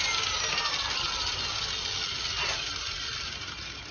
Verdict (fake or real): real